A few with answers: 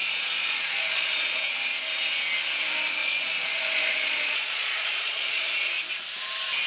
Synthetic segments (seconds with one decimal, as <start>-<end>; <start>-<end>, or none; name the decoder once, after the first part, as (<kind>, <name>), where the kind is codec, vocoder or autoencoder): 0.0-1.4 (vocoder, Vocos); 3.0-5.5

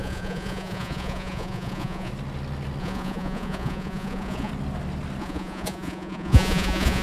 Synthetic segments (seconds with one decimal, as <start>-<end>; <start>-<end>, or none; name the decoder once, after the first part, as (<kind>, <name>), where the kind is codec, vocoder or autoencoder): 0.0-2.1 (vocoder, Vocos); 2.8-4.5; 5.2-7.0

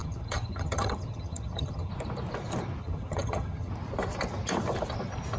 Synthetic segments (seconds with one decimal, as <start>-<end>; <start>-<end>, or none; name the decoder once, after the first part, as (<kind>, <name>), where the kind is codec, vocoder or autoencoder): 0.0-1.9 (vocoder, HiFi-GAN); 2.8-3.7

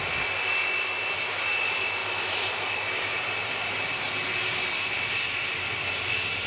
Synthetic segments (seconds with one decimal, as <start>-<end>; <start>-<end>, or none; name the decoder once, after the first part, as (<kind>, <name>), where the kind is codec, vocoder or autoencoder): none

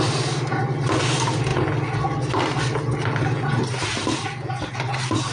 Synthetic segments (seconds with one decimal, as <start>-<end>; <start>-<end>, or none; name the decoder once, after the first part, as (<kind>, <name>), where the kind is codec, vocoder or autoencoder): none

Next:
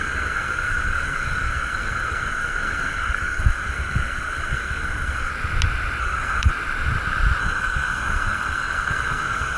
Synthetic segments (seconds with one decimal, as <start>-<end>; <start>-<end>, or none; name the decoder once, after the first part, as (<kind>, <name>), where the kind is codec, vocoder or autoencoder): 0.0-5.3 (codec, SNAC); 6.0-6.5; 7.4-9.6